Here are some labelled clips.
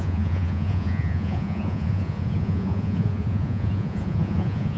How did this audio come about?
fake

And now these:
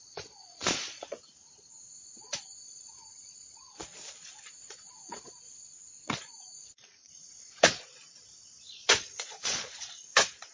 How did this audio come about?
fake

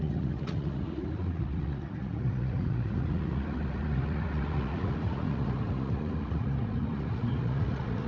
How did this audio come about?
fake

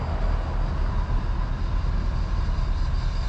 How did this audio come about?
real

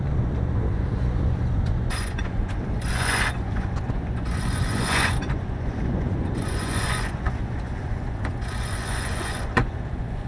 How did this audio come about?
fake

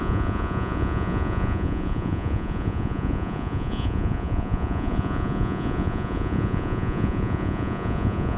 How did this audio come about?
fake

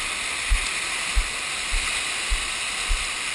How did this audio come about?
real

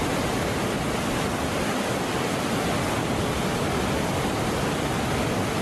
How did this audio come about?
real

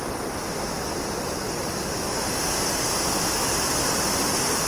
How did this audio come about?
real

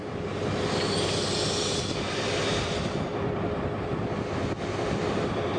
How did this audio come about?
real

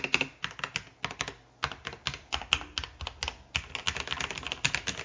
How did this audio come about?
real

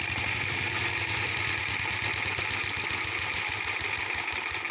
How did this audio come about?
real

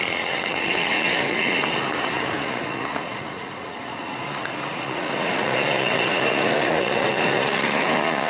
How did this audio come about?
fake